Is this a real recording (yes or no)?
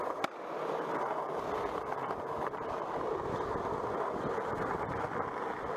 yes